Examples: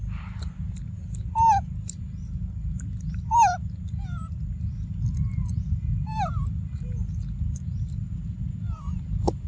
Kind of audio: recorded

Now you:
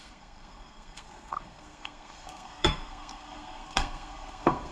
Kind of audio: remade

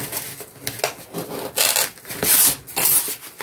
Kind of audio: recorded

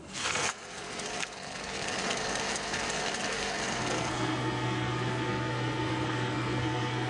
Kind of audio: remade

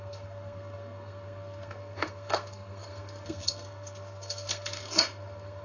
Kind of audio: remade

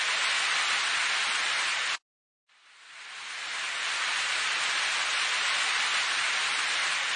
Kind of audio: recorded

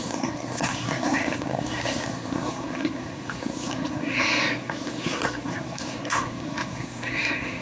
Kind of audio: remade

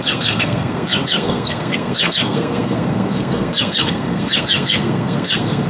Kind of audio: remade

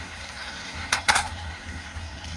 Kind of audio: remade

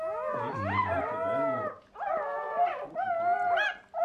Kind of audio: recorded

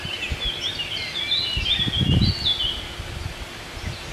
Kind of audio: recorded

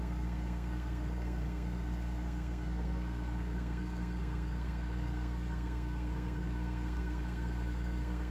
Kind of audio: remade